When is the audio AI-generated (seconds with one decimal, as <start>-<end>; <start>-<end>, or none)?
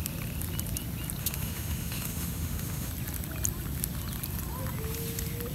1.2-2.9